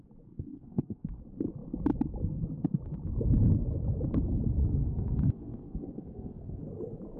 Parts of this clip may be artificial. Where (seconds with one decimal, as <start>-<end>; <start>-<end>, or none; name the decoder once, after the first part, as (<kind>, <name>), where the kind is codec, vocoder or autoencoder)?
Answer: 0.5-1.2 (codec, SNAC); 4.8-6.6